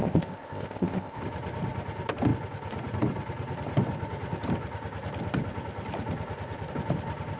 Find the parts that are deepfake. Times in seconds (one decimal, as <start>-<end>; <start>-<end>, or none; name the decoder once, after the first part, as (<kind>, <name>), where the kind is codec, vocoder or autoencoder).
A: 0.0-1.2 (codec, ZipCodec)